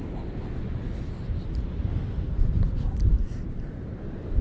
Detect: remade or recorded recorded